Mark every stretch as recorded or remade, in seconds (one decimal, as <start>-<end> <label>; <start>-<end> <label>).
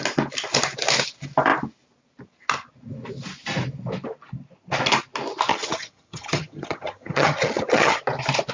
0.0-5.5 recorded; 5.5-8.0 remade; 8.0-8.5 recorded